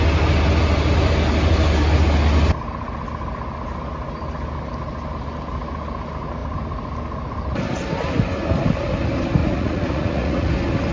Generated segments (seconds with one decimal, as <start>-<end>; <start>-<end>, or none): 9.4-10.5